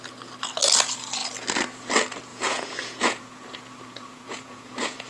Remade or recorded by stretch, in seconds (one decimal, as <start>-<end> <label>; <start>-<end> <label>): 0.0-2.3 recorded; 2.3-5.1 remade